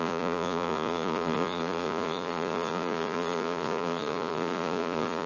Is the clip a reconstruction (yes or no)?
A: yes